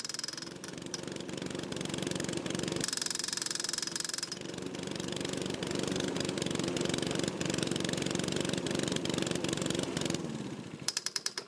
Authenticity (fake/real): fake